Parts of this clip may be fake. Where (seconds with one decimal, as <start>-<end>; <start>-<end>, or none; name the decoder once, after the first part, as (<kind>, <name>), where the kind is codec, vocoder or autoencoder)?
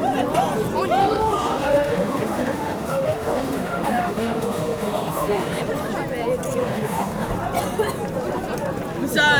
1.0-5.6 (autoencoder, DAC-VAE); 6.6-7.3